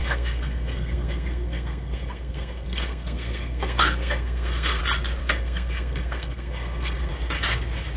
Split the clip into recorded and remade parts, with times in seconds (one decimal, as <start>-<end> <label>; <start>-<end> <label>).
0.0-4.8 remade; 4.8-5.2 recorded; 5.2-7.1 remade; 7.1-8.0 recorded